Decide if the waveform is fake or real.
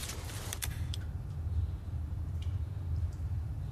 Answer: fake